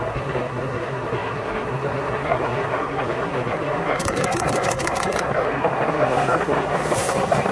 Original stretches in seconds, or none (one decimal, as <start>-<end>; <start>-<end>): none